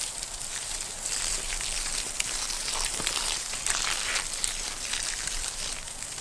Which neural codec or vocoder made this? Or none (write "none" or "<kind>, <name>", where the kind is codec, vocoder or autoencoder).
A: vocoder, BigVGAN v2